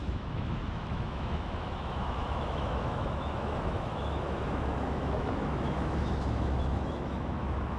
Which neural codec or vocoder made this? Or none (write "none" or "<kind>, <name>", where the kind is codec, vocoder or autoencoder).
autoencoder, DAC-VAE